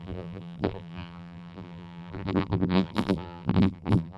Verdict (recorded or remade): remade